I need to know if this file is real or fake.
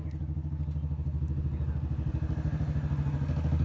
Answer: real